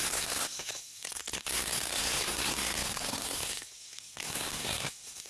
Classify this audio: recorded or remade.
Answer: remade